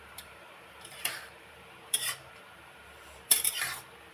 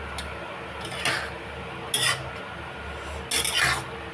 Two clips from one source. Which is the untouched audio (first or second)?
second